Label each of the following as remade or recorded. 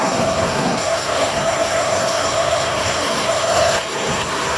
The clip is remade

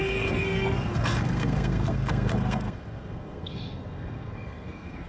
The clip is remade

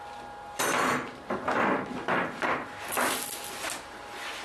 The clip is recorded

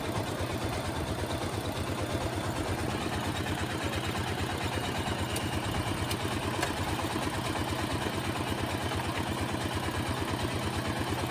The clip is recorded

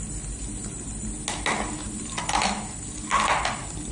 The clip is recorded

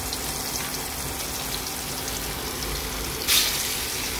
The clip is recorded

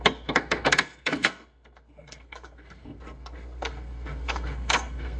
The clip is remade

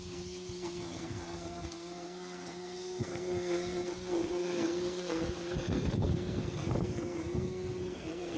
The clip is remade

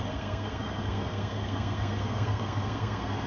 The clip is remade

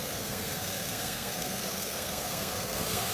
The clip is remade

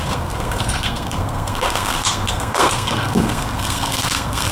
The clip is remade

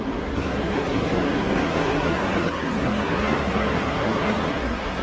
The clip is remade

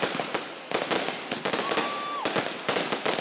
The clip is recorded